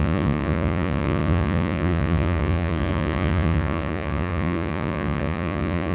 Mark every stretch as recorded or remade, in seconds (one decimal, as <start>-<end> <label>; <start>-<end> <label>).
0.0-5.9 remade